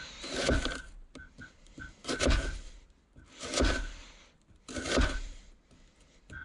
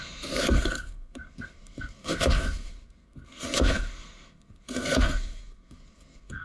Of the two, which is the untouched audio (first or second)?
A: first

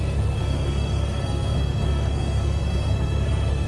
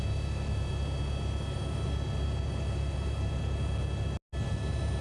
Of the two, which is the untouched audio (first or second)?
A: second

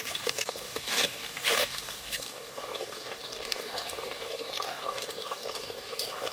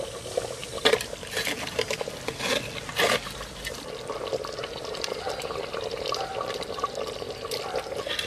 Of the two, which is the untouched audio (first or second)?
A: second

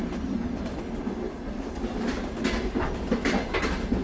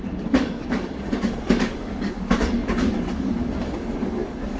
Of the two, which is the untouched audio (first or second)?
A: first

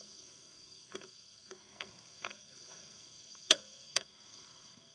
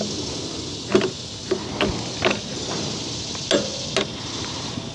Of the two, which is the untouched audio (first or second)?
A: second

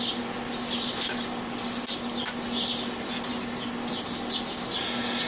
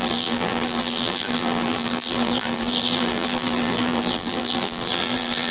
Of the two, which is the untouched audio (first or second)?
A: first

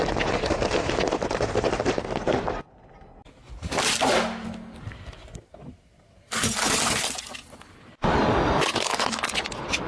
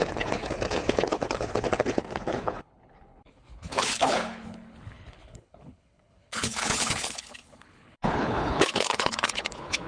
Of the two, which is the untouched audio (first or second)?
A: first